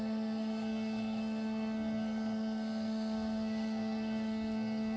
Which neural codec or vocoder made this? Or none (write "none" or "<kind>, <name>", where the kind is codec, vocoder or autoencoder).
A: codec, SNAC